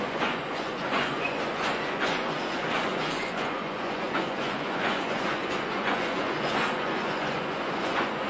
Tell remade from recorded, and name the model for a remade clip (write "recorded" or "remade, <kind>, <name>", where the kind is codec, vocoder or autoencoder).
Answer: remade, vocoder, Vocos